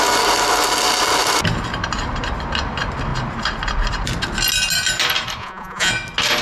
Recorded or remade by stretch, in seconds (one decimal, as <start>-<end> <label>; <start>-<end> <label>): 0.0-5.4 recorded; 5.4-5.9 remade; 5.9-6.4 recorded